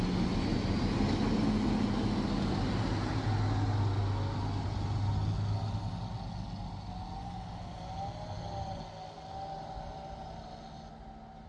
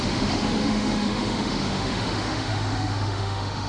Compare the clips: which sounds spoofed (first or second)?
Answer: second